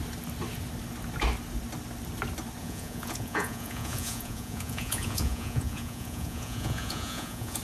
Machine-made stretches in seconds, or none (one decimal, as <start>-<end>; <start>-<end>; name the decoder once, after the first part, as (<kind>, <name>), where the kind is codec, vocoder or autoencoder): 2.6-7.6 (vocoder, Vocos)